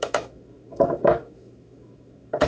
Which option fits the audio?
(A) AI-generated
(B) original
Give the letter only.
A